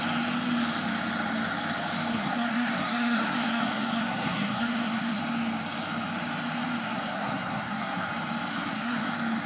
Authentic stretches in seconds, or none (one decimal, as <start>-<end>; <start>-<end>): 0.0-2.1; 5.2-6.8; 8.1-8.5; 9.1-9.5